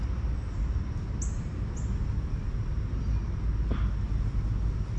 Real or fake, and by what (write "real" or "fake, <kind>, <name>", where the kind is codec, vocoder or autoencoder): real